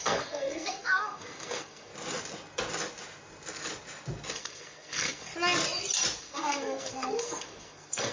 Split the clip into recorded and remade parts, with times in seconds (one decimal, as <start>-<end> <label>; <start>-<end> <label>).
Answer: 0.0-1.9 remade; 1.9-4.3 recorded; 4.3-5.3 remade; 5.3-6.2 recorded; 6.2-8.1 remade

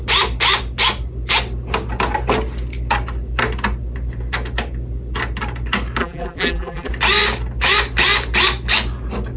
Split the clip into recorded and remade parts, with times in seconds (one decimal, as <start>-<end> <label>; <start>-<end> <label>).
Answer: 0.0-6.0 recorded; 6.0-6.9 remade; 6.9-9.4 recorded

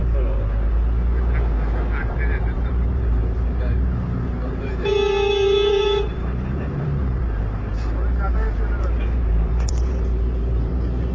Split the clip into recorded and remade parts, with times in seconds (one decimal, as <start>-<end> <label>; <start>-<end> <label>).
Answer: 0.0-2.0 recorded; 2.0-11.1 remade

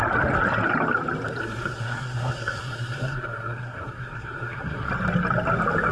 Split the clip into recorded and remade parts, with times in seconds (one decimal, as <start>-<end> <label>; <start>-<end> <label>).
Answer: 0.0-1.4 recorded; 1.4-4.9 remade; 4.9-5.9 recorded

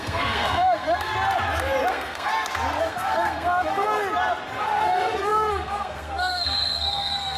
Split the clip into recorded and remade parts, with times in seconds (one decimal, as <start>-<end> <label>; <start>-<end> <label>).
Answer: 0.0-1.1 remade; 1.1-1.9 recorded; 1.9-2.3 remade; 2.3-2.8 recorded; 2.8-4.0 remade; 4.0-4.6 recorded; 4.6-7.4 remade

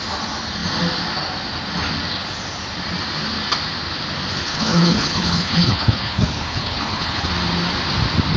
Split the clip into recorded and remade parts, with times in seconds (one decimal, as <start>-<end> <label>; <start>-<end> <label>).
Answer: 0.0-4.4 recorded; 4.4-7.3 remade; 7.3-8.4 recorded